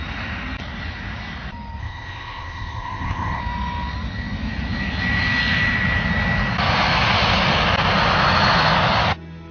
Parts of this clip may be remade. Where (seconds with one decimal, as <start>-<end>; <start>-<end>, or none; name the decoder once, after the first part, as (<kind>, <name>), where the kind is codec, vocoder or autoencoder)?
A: 1.8-3.4 (codec, ZipCodec)